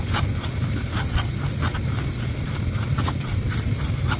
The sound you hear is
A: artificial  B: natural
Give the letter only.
B